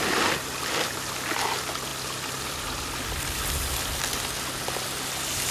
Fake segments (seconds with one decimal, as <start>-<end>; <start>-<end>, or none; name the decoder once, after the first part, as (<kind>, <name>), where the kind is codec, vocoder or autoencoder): none